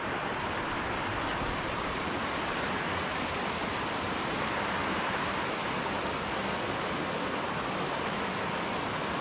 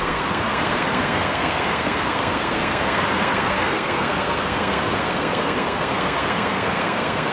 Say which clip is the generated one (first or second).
second